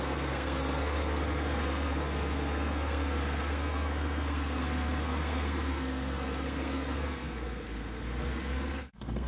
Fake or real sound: fake